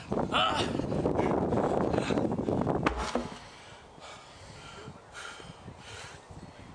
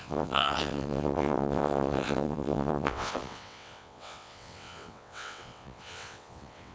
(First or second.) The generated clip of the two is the second